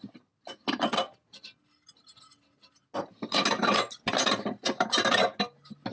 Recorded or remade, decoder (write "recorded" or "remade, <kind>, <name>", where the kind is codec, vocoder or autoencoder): recorded